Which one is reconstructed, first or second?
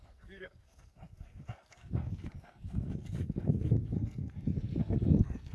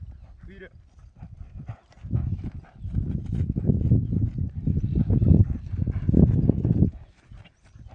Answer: first